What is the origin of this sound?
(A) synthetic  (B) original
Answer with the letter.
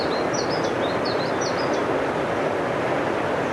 B